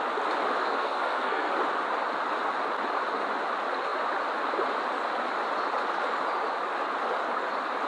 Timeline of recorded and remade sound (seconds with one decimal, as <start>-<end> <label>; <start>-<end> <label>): 0.0-0.6 recorded; 0.6-1.5 remade; 1.5-7.9 recorded

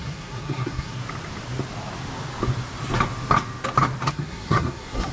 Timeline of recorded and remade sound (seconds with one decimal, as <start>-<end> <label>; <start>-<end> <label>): 0.0-1.0 remade; 1.0-4.1 recorded; 4.1-5.1 remade

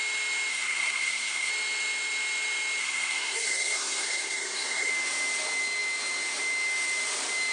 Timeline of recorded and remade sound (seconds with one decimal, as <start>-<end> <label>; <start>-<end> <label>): 0.0-0.5 recorded; 0.5-1.5 remade; 1.5-2.8 recorded; 2.8-4.9 remade; 4.9-7.5 recorded

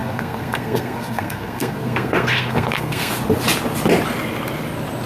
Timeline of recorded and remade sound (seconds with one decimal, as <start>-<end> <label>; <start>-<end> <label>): 0.0-3.1 remade; 3.1-5.1 recorded

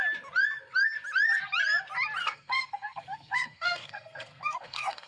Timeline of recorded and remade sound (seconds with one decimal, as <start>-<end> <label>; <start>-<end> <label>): 0.0-2.2 recorded; 2.2-5.1 remade

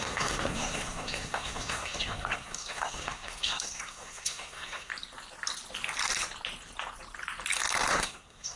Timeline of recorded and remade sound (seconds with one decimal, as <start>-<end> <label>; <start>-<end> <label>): 0.0-4.9 remade; 4.9-7.9 recorded; 7.9-8.6 remade

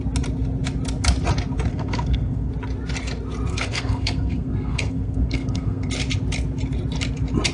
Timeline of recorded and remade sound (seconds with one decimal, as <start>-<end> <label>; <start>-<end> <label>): 0.0-1.7 recorded; 1.7-2.5 remade; 2.5-3.5 recorded; 3.5-5.9 remade; 5.9-7.5 recorded